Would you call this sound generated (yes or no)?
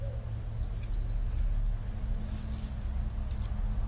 no